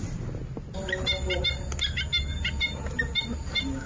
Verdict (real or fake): real